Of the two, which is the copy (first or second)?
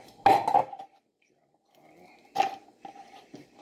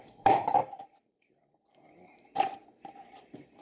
second